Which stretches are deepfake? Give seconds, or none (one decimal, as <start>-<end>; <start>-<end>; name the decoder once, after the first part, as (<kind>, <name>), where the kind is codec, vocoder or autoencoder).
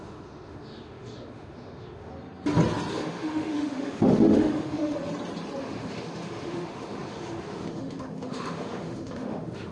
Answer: 0.0-2.1 (autoencoder, DAC-VAE); 2.9-5.0; 5.6-9.7